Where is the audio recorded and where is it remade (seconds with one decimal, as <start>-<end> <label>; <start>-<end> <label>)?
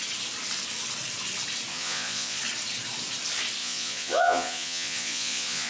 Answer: 0.0-1.7 recorded; 1.7-2.4 remade; 2.4-3.6 recorded; 3.6-5.7 remade